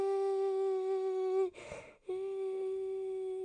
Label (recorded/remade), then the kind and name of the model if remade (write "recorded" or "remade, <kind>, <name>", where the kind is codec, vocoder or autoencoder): remade, autoencoder, DAC-VAE